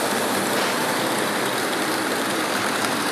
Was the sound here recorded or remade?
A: recorded